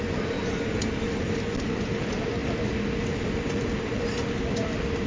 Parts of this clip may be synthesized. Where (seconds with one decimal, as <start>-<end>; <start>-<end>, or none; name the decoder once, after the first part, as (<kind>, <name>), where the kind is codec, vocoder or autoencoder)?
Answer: none